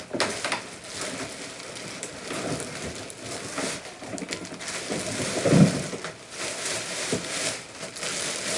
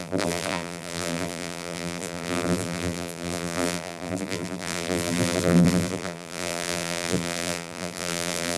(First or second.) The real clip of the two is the first